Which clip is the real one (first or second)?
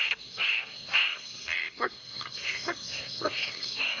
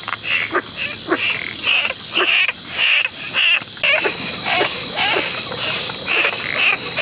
second